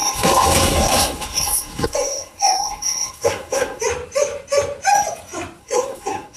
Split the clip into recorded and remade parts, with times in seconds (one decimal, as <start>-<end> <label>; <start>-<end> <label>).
0.0-3.8 remade; 3.8-5.6 recorded; 5.6-6.4 remade